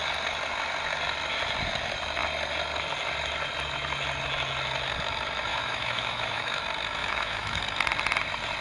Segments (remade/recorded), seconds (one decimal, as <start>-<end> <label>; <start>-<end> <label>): 0.0-5.5 recorded; 5.5-6.6 remade; 6.6-7.0 recorded; 7.0-7.6 remade; 7.6-8.6 recorded